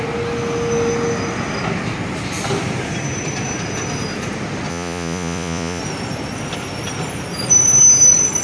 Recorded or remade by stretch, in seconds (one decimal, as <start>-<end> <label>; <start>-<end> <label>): 0.0-4.7 recorded; 4.7-5.8 remade; 5.8-8.4 recorded